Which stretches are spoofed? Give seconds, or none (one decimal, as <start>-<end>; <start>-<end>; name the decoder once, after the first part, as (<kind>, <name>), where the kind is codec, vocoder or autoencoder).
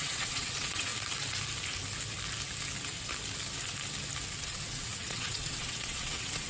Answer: 0.0-0.9 (vocoder, WaveNeXt); 4.4-6.5